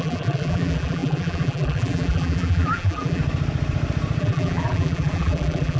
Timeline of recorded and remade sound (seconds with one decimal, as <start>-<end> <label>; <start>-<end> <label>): 0.0-3.2 remade; 3.2-4.2 recorded; 4.2-5.8 remade